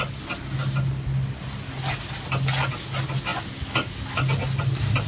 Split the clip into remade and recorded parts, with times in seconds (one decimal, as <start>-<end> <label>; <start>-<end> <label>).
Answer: 0.0-5.1 recorded